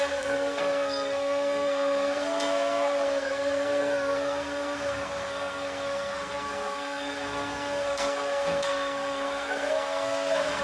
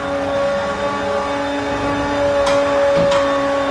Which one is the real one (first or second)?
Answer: second